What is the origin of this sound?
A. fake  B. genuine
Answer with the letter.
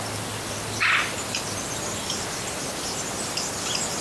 B